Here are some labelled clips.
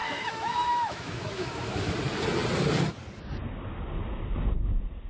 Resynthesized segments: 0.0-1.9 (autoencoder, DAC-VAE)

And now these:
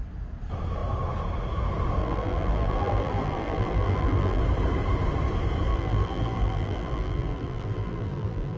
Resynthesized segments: 2.0-4.4 (vocoder, BigVGAN v2); 5.7-8.6

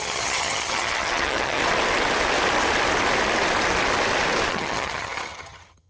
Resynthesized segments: 0.0-1.6 (vocoder, HiFi-GAN); 4.5-5.9